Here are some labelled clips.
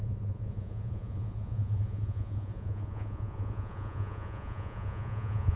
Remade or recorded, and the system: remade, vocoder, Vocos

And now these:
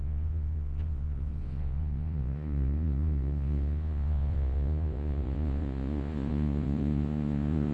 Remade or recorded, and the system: remade, vocoder, Vocos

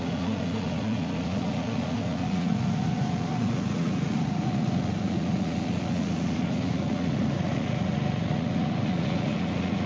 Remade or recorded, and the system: remade, vocoder, Vocos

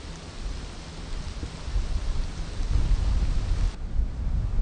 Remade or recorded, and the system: recorded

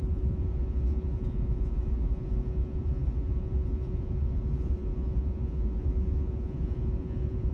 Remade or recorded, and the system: remade, vocoder, Vocos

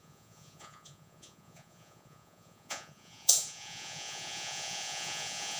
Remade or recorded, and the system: remade, vocoder, Vocos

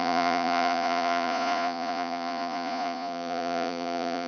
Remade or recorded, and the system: remade, vocoder, Vocos